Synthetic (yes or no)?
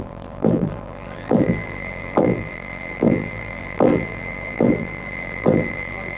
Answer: yes